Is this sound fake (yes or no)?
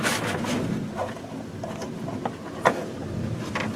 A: no